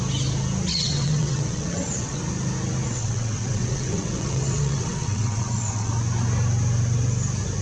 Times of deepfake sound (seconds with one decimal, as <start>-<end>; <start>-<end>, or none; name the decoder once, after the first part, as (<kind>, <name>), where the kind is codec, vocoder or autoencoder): 0.7-2.2 (vocoder, WaveNeXt); 2.9-5.9